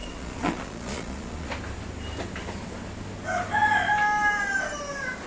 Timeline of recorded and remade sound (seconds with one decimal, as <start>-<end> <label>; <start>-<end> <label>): 0.0-1.5 remade; 1.5-5.3 recorded